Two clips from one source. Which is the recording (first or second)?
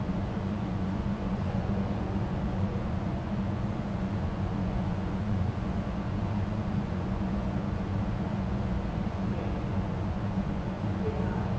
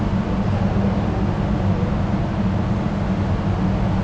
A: second